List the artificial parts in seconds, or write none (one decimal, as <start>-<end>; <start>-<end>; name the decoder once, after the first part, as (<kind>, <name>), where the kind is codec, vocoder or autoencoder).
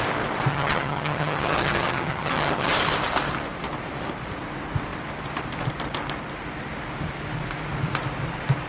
0.5-2.7 (vocoder, HiFi-GAN)